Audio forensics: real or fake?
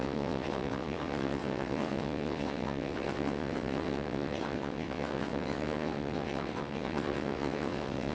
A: fake